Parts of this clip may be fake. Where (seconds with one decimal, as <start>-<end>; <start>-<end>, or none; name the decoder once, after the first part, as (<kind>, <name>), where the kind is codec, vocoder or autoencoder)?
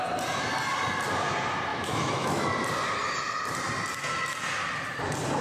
1.7-2.4 (autoencoder, DAC-VAE)